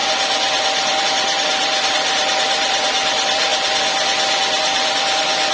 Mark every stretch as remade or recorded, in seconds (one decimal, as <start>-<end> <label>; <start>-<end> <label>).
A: 0.0-1.0 recorded; 1.0-3.5 remade; 3.5-4.9 recorded; 4.9-5.5 remade